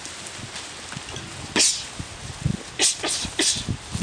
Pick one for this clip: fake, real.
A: real